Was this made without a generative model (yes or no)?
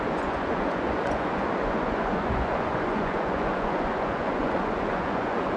no